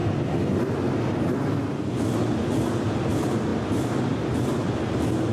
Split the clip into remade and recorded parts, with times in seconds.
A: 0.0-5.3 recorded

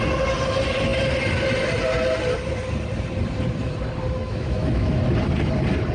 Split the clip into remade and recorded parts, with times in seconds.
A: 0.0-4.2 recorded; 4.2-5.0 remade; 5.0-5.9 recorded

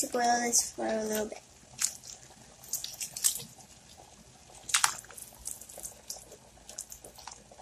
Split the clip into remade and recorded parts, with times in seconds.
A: 0.0-7.6 recorded

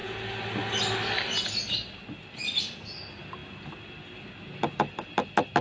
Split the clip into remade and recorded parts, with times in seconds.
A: 0.0-5.6 recorded

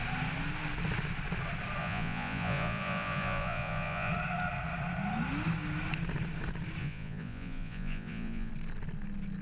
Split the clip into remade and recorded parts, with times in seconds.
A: 0.0-1.8 recorded; 1.8-4.1 remade; 4.1-6.8 recorded; 6.8-8.5 remade; 8.5-9.4 recorded

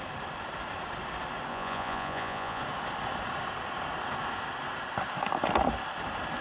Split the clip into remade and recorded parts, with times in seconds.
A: 0.0-1.5 recorded; 1.5-2.6 remade; 2.6-6.4 recorded

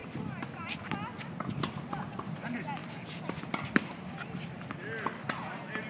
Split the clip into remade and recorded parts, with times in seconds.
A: 0.0-5.9 recorded

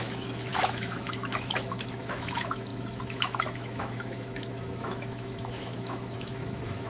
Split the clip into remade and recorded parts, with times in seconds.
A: 0.0-6.9 remade